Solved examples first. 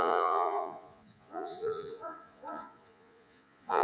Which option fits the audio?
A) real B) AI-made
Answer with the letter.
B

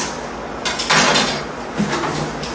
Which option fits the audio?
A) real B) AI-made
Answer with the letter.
A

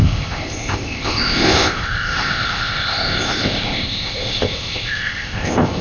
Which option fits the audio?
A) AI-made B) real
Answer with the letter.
A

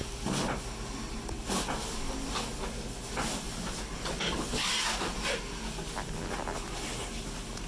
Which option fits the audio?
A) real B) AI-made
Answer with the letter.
A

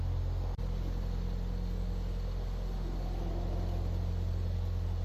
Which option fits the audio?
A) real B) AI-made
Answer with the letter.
A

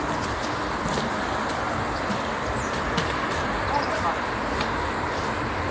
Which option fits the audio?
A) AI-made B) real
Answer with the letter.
B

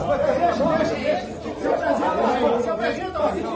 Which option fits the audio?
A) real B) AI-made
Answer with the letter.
A